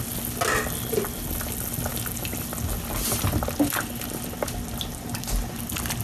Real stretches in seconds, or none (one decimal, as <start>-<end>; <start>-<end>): 0.0-6.0